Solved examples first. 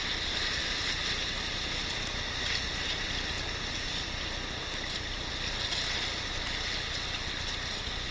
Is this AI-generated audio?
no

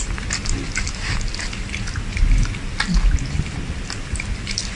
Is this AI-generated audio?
no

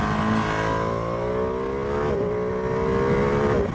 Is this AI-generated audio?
no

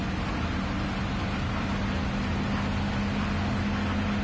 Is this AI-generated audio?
no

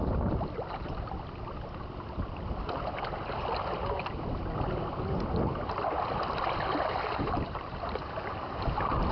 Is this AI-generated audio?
no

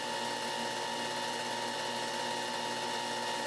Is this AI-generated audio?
no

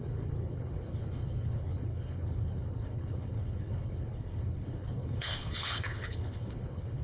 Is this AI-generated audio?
yes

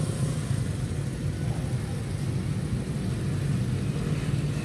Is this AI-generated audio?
no